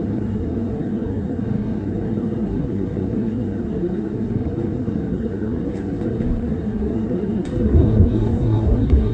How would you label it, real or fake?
fake